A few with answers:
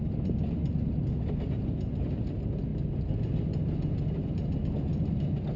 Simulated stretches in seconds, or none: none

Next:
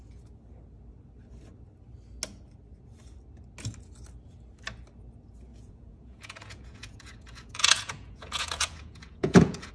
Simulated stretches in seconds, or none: 5.5-9.7 (vocoder, Vocos)

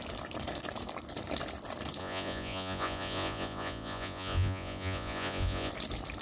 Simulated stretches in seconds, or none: 2.0-5.7 (vocoder, Vocos)

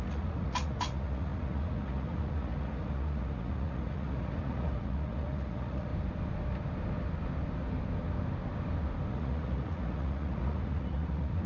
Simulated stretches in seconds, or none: 0.0-5.9 (vocoder, Vocos); 9.1-11.5